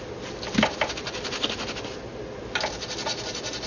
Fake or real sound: real